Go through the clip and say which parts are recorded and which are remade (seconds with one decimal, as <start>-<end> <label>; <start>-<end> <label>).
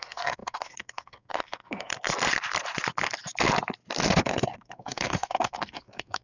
0.0-1.9 remade; 1.9-4.2 recorded; 4.2-6.2 remade